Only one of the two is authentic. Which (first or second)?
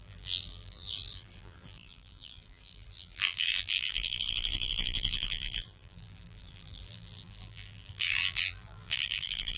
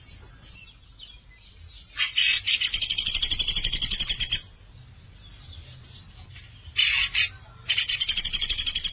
second